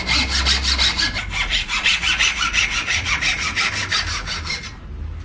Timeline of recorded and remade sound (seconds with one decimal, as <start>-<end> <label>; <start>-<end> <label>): 0.0-1.5 recorded; 1.5-3.7 remade; 3.7-5.2 recorded